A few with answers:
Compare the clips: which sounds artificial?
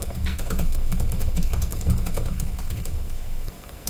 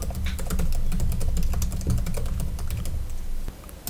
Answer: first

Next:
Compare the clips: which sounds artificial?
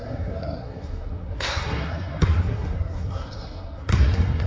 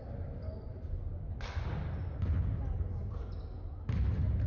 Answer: first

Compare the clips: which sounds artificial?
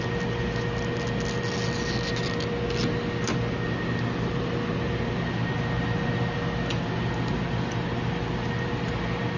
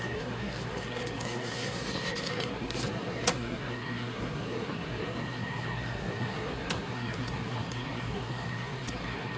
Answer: second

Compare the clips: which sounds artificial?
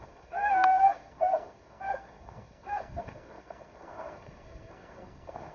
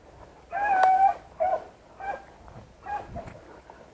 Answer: first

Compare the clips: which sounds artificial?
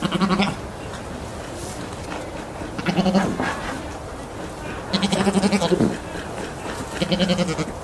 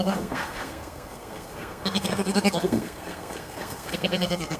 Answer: second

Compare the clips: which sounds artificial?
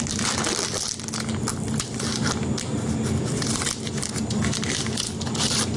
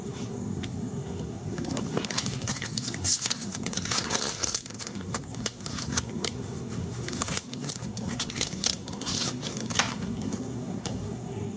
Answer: second